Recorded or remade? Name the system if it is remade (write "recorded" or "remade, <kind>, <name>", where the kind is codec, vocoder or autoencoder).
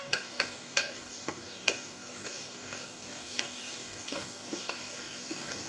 remade, codec, DAC